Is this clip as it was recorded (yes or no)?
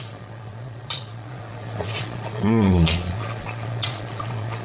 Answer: no